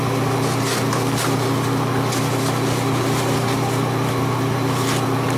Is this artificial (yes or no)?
no